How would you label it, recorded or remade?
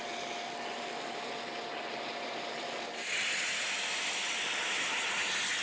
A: recorded